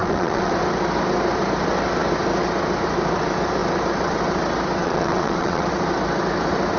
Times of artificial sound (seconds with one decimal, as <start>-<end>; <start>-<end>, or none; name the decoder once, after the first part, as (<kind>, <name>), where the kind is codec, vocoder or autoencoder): 0.0-0.5 (vocoder, WaveNeXt); 4.8-5.7